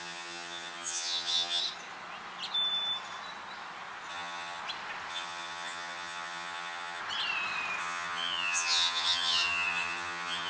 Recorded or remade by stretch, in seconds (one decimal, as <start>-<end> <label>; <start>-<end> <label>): 0.0-1.6 remade; 1.6-4.1 recorded; 4.1-4.6 remade; 4.6-5.1 recorded; 5.1-7.0 remade; 7.0-7.8 recorded; 7.8-10.5 remade